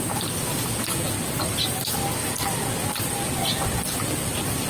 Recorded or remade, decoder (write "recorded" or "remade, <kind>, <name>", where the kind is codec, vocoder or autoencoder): recorded